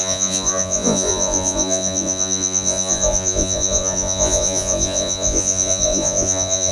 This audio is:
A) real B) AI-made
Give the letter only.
B